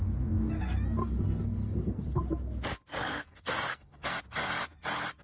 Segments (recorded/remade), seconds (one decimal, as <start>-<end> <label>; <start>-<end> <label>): 0.0-1.0 recorded; 1.0-2.2 remade; 2.2-3.1 recorded; 3.1-4.2 remade; 4.2-5.2 recorded

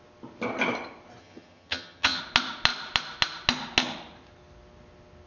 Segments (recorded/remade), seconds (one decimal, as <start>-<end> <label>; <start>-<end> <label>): 0.0-1.2 recorded; 1.2-2.2 remade; 2.2-5.3 recorded

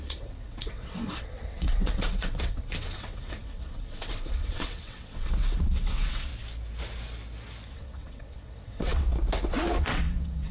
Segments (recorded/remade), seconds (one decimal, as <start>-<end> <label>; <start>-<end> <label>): 0.0-6.3 remade; 6.3-7.7 recorded; 7.7-9.1 remade; 9.1-9.8 recorded; 9.8-10.5 remade

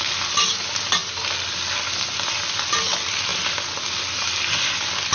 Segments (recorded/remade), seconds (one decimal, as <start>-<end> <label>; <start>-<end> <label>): 0.0-5.1 recorded

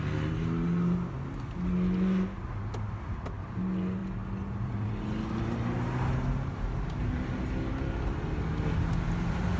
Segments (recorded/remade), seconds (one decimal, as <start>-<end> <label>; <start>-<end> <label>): 0.0-9.6 recorded

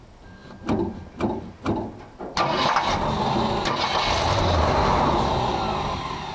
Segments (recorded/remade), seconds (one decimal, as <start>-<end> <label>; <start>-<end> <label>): 0.0-6.3 recorded